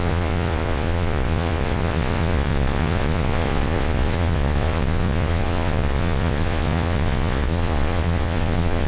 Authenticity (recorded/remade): remade